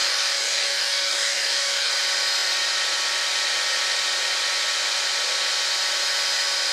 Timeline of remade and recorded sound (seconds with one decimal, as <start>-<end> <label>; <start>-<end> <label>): 0.0-1.9 remade; 1.9-6.7 recorded